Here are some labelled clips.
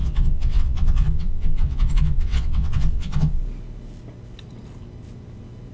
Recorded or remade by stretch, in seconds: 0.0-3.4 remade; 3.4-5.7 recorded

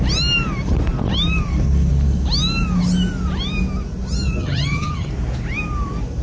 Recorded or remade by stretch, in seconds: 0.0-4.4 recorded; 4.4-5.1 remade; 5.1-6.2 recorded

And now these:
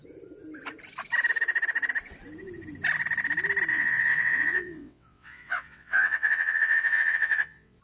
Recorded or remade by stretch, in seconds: 0.0-3.7 recorded; 3.7-7.8 remade

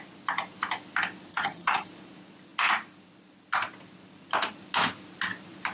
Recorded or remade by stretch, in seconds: 0.0-1.3 recorded; 1.3-1.9 remade; 1.9-5.7 recorded

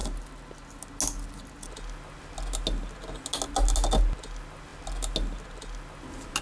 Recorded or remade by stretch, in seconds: 0.0-6.4 recorded